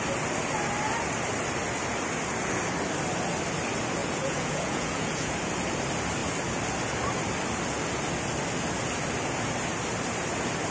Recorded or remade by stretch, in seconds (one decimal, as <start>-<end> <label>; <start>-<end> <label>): 0.0-4.0 recorded; 4.0-5.3 remade; 5.3-10.7 recorded